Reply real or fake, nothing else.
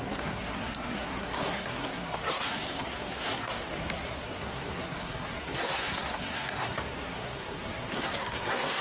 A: fake